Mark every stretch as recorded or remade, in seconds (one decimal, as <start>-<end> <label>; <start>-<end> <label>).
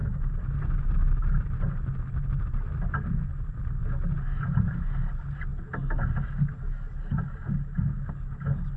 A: 0.0-8.8 recorded